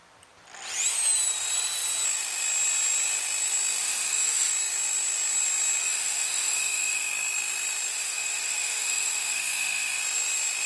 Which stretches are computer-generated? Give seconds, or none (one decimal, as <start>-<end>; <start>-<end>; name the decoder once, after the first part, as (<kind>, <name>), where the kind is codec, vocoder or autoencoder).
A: 3.8-4.5 (autoencoder, DAC-VAE); 5.8-7.1; 7.9-10.0